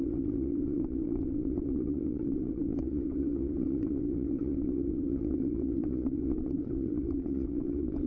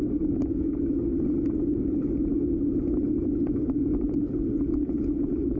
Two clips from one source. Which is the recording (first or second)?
second